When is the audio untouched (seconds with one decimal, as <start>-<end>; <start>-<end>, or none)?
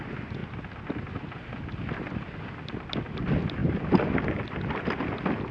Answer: 0.0-5.5